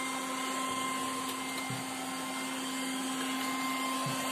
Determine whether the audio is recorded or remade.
recorded